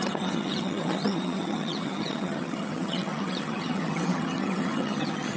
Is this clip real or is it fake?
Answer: fake